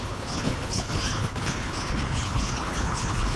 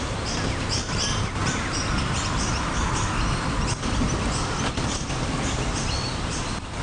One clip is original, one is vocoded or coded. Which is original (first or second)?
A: second